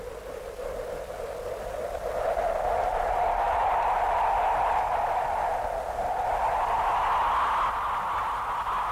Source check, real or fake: fake